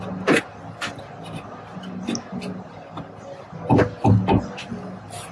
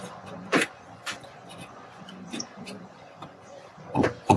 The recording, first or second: first